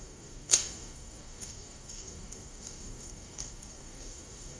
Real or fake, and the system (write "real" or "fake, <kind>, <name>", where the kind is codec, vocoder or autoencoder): fake, codec, DAC